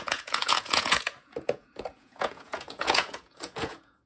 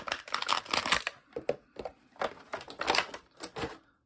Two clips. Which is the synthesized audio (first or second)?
first